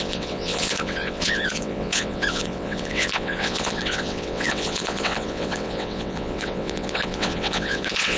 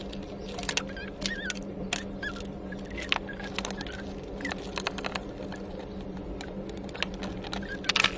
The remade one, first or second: first